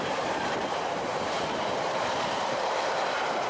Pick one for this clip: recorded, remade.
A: remade